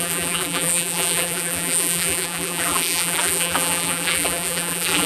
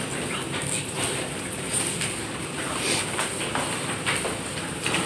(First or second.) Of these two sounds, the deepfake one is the first